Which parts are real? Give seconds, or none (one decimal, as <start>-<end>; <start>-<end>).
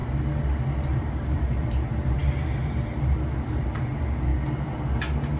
0.0-0.9; 4.3-5.4